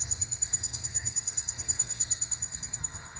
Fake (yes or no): yes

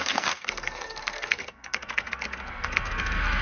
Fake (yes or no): yes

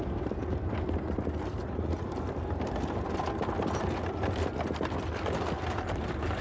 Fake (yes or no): no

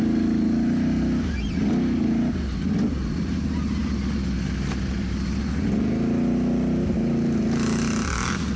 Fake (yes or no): no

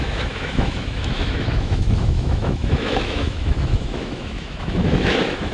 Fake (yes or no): yes